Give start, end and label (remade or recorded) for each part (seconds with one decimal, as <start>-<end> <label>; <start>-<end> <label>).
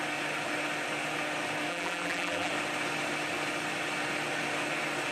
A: 0.0-1.7 recorded; 1.7-2.5 remade; 2.5-5.1 recorded